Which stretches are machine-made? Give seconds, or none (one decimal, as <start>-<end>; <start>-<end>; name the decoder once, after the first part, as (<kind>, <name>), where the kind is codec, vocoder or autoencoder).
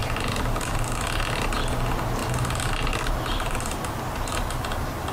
none